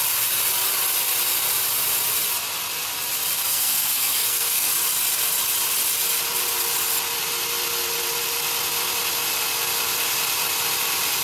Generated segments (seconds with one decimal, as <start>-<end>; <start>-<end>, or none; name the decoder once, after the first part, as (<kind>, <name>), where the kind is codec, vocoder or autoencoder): 3.4-4.7 (codec, SNAC)